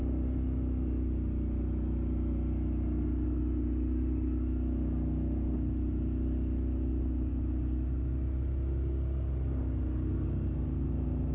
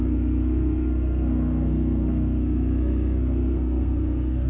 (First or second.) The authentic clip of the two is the first